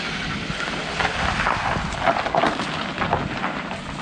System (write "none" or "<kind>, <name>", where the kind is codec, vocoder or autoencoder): none